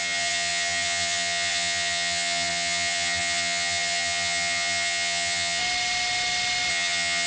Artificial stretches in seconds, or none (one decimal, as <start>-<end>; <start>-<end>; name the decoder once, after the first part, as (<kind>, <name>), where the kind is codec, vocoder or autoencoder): 0.0-5.6 (vocoder, HiFi-GAN); 6.7-7.3